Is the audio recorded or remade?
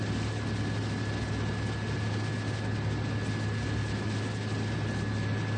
recorded